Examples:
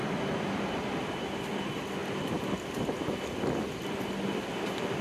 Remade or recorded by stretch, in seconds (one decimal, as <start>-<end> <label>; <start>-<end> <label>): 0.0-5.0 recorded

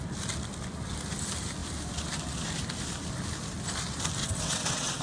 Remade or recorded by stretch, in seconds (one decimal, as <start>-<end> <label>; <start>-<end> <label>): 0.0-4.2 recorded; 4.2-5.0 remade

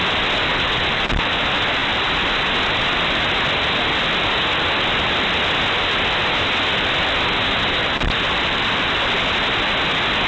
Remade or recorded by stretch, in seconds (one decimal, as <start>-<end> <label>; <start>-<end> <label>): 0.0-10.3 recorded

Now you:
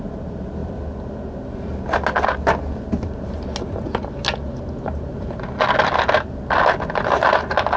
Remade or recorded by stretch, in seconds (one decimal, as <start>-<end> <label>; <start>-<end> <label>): 0.0-7.8 recorded